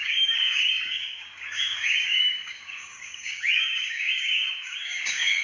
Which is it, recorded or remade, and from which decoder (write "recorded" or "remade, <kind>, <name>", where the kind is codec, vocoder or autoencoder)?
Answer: remade, codec, DAC